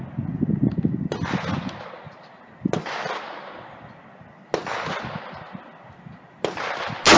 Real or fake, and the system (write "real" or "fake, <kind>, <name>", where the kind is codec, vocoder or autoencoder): real